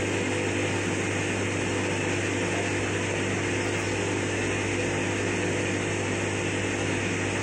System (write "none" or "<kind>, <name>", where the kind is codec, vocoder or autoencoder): none